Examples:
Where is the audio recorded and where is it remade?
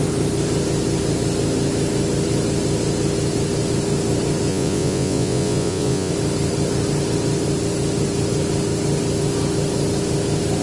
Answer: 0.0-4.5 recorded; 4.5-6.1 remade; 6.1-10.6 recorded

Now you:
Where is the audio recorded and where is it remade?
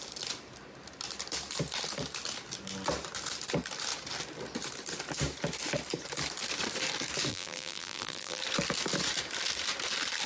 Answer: 0.0-7.3 recorded; 7.3-8.4 remade; 8.4-10.3 recorded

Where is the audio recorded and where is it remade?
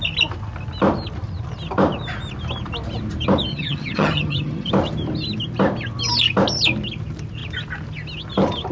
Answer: 0.0-3.5 recorded; 3.5-4.7 remade; 4.7-8.7 recorded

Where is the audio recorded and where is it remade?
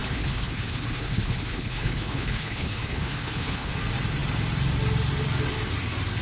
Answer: 0.0-3.7 remade; 3.7-6.2 recorded